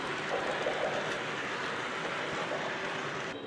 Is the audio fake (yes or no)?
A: no